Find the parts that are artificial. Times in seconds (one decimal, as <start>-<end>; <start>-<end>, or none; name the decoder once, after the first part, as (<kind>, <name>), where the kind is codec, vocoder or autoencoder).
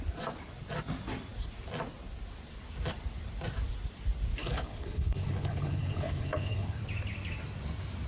4.4-6.8 (codec, HILCodec)